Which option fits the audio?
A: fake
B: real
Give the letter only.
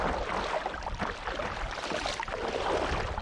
B